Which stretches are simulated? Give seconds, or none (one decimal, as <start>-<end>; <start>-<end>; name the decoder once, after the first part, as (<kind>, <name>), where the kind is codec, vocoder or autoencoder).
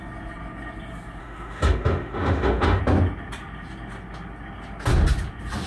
1.2-2.8 (autoencoder, DAC-VAE)